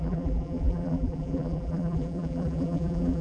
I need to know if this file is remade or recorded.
remade